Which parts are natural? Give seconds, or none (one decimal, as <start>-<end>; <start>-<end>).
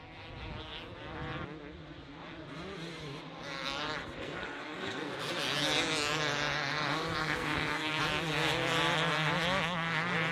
0.0-4.0; 5.1-7.2; 8.0-10.3